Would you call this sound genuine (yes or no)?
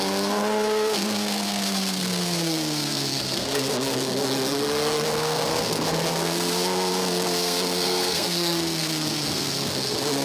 no